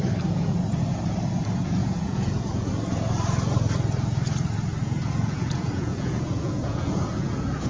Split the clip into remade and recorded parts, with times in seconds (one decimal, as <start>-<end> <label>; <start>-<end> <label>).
0.0-1.8 recorded; 1.8-2.7 remade; 2.7-4.8 recorded; 4.8-7.7 remade